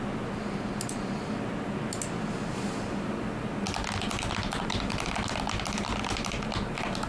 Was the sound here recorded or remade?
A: recorded